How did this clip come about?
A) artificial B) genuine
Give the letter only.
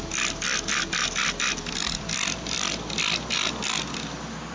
B